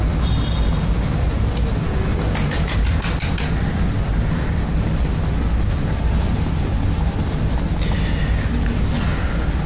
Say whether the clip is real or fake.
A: real